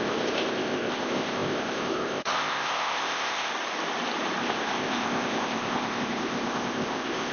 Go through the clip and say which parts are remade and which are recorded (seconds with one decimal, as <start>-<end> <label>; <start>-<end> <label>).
0.0-3.5 remade; 3.5-4.4 recorded; 4.4-7.3 remade